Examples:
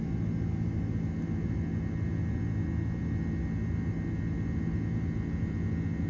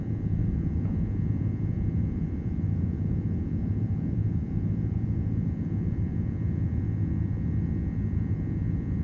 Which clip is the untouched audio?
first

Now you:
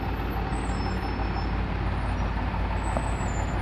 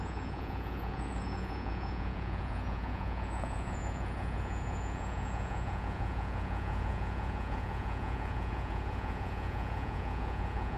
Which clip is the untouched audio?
first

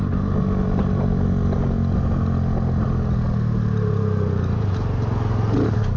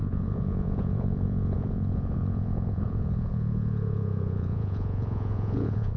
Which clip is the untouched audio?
first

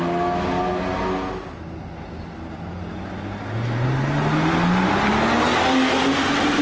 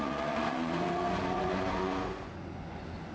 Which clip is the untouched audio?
first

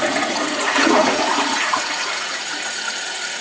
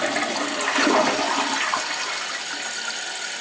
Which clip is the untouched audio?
second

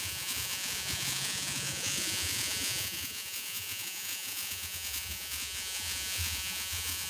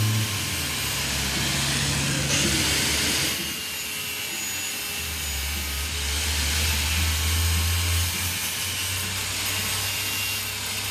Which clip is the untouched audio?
second